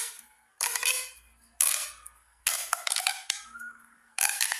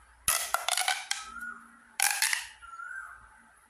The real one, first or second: second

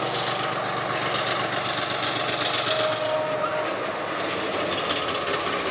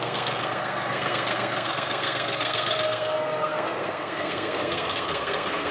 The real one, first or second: first